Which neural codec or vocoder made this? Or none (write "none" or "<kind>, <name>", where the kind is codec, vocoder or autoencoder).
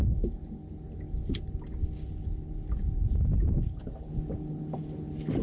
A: none